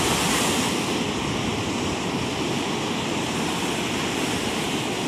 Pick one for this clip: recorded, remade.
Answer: recorded